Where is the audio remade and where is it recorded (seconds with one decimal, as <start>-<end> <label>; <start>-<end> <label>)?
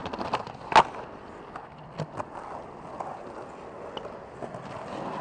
0.0-5.2 recorded